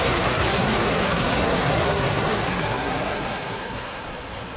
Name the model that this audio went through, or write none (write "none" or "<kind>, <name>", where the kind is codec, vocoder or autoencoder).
codec, SNAC